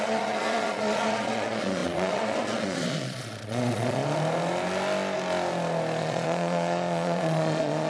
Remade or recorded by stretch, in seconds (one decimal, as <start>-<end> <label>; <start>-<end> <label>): 0.0-4.0 remade; 4.0-6.0 recorded; 6.0-7.9 remade